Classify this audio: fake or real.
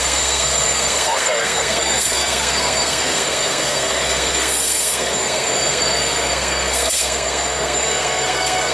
fake